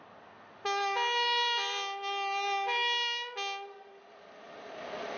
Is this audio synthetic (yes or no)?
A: no